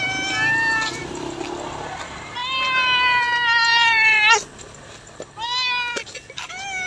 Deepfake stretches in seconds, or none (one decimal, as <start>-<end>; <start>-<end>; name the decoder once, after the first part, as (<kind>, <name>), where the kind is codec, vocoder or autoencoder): none